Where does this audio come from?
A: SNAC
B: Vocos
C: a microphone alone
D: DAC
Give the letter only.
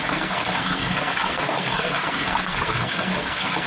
A